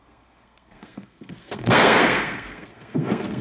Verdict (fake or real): fake